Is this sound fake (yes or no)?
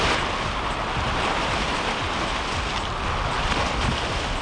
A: no